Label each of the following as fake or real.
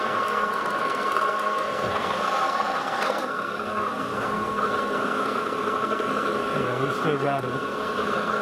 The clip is fake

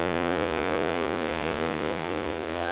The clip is fake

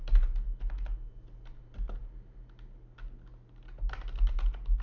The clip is real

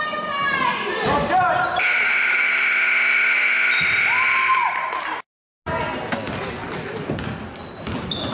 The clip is real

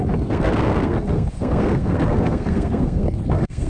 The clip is fake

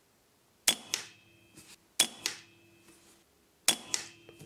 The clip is real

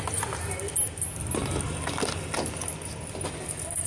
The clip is real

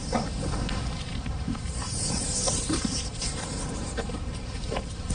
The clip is fake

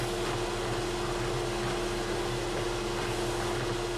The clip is real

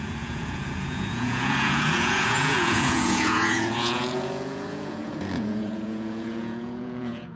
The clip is fake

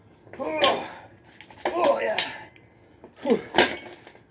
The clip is real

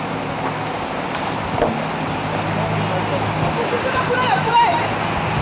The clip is real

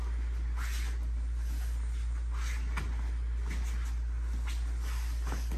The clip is real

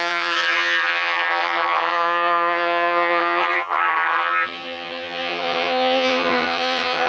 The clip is fake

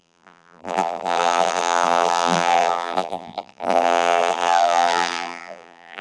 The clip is fake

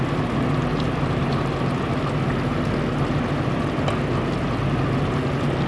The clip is real